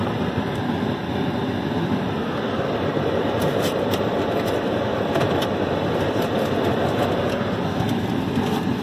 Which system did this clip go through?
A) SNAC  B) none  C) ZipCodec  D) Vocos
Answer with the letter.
B